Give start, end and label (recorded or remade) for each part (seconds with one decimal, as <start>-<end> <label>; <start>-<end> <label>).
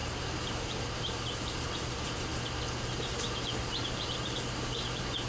0.0-2.3 remade; 2.3-3.6 recorded; 3.6-5.3 remade